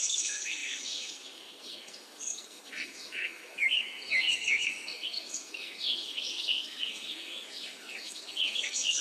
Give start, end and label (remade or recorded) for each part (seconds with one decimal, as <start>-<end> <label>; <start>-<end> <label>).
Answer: 0.0-9.0 remade